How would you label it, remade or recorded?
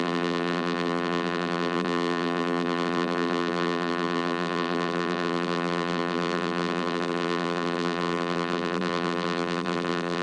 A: remade